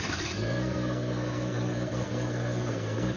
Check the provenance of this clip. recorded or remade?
remade